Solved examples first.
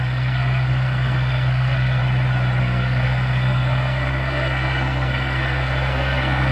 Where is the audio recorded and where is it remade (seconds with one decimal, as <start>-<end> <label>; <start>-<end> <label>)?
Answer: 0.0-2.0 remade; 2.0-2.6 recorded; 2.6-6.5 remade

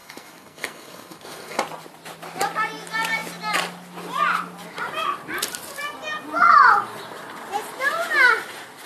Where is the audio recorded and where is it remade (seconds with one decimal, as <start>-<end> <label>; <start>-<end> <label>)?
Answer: 0.0-1.6 remade; 1.6-8.9 recorded

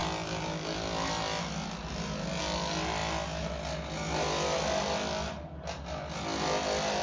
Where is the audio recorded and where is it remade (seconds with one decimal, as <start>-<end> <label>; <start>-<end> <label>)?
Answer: 0.0-7.0 recorded